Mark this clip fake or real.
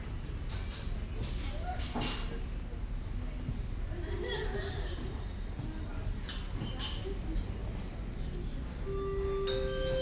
real